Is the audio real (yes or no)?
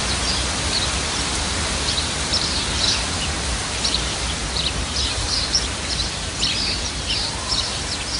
no